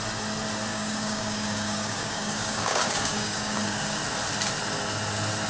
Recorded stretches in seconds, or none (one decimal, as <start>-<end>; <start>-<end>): 0.0-0.7; 4.0-5.5